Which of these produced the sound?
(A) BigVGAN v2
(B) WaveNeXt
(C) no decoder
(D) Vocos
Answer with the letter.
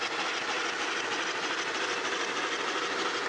C